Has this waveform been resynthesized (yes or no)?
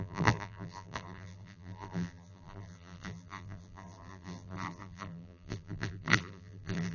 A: yes